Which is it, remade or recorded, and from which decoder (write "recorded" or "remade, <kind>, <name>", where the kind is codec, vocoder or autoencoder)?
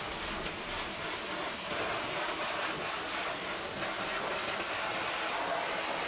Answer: recorded